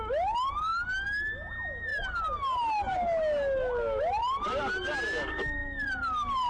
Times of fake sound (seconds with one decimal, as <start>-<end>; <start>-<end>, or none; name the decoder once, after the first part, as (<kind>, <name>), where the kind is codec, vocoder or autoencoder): 5.6-6.5 (vocoder, BigVGAN v2)